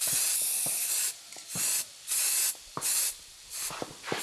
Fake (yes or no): no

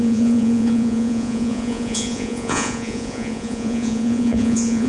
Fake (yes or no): yes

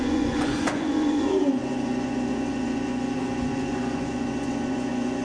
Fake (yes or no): yes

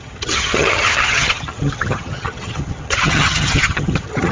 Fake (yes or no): yes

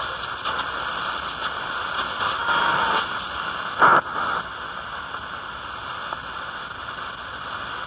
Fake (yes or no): no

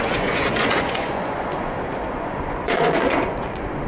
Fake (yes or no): yes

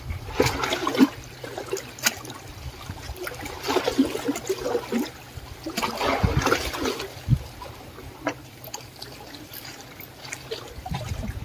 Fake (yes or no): no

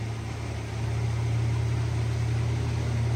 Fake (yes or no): no